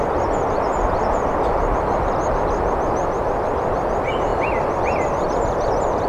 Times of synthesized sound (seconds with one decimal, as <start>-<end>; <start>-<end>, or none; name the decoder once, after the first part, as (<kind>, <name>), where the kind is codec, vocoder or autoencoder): none